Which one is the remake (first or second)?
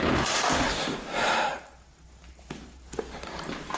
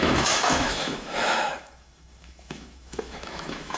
second